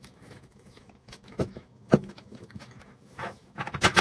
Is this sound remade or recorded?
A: remade